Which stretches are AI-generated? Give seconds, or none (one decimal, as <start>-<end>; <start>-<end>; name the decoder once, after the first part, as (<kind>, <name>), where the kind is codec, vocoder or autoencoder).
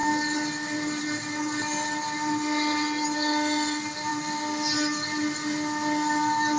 none